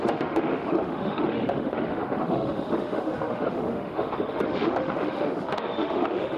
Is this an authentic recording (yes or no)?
no